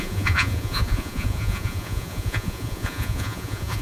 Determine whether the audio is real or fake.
fake